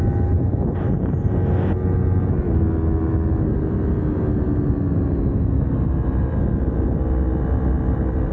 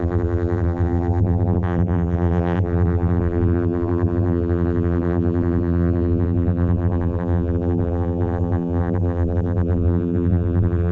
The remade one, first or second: second